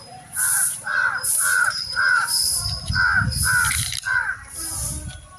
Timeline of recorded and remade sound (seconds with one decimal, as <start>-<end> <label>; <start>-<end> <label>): 0.0-2.4 remade; 2.4-3.7 recorded; 3.7-4.7 remade; 4.7-5.4 recorded